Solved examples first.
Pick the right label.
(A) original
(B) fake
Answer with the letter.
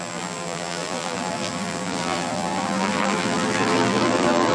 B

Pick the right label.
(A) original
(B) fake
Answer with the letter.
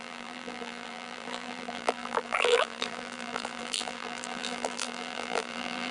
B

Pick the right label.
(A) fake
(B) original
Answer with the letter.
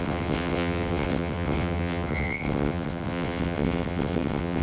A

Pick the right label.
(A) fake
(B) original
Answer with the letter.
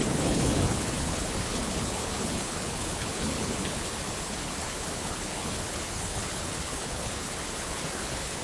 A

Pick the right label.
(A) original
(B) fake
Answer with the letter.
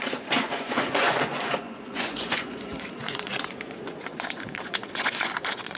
B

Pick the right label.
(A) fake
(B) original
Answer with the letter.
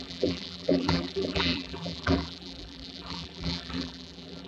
A